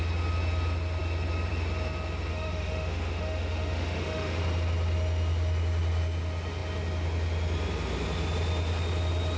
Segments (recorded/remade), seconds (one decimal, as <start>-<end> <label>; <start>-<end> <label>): 0.0-2.3 recorded; 2.3-4.4 remade; 4.4-9.4 recorded